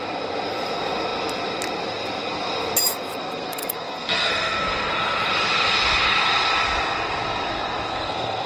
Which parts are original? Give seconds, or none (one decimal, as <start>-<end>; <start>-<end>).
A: 0.0-3.2; 4.9-7.9